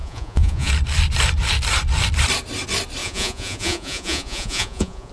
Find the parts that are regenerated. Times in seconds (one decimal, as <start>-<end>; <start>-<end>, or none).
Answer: 0.0-0.7; 3.0-5.1